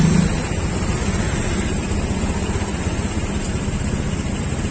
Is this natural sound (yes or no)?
yes